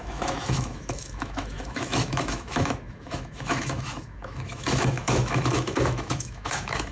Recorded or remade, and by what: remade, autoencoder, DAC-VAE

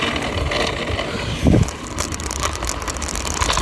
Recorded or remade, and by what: recorded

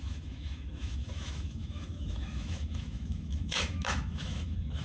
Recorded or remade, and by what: remade, autoencoder, DAC-VAE